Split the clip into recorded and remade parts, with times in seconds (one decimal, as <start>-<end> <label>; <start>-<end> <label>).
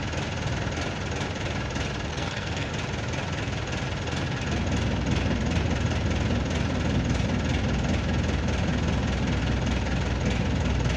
0.0-2.1 recorded; 2.1-2.7 remade; 2.7-11.0 recorded